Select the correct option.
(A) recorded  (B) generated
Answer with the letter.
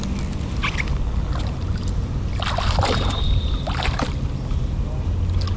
A